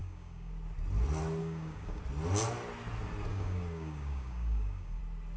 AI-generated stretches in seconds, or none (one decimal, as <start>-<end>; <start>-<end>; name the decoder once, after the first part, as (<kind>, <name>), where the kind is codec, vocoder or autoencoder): 0.0-0.5 (codec, DAC); 1.4-2.0; 3.3-5.0